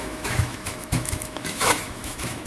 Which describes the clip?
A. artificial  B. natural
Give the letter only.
A